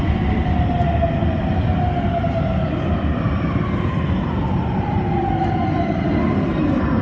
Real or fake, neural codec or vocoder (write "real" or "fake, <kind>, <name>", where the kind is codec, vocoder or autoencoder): real